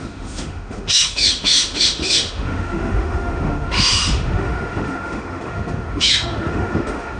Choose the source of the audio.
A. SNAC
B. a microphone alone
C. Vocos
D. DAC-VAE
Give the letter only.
D